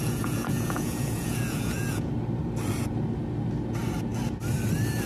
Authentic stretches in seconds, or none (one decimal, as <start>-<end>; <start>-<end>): 2.1-5.1